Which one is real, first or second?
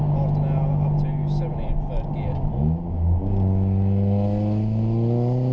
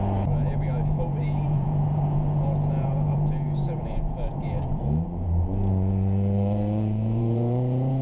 first